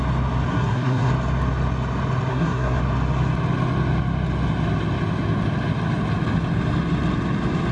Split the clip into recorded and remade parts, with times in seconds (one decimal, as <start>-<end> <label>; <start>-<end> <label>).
0.0-0.5 recorded; 0.5-1.1 remade; 1.1-2.3 recorded; 2.3-2.8 remade; 2.8-7.7 recorded